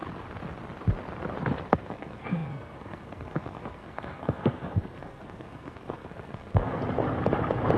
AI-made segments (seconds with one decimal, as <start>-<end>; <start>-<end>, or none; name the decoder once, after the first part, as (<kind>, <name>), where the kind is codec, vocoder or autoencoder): 1.7-6.8 (codec, SNAC)